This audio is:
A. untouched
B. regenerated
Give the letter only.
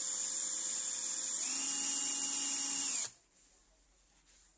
A